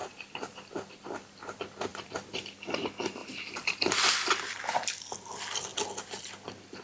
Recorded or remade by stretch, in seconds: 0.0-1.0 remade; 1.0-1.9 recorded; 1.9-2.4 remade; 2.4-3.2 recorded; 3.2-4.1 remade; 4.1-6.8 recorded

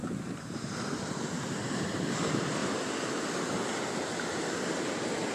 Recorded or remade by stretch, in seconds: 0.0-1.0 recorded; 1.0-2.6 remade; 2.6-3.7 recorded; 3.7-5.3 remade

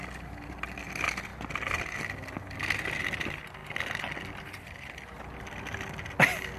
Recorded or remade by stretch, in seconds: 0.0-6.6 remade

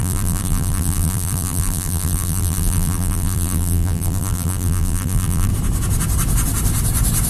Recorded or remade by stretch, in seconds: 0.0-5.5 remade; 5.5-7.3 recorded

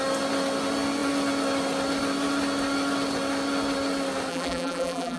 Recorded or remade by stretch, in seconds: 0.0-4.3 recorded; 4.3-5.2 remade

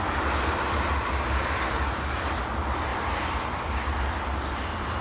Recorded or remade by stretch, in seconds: 0.0-2.9 remade; 2.9-4.5 recorded; 4.5-5.0 remade